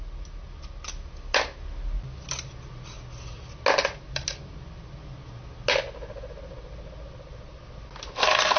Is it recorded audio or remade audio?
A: recorded